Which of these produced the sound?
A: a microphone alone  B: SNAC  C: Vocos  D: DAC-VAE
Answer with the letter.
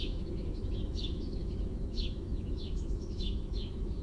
D